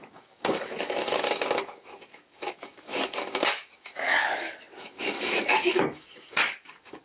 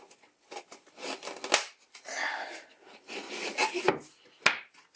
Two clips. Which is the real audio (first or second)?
second